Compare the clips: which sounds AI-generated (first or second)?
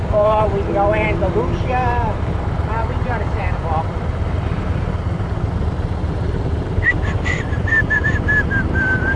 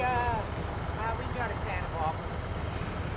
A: first